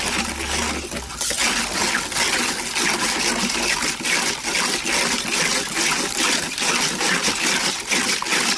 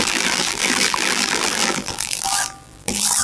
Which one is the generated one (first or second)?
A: second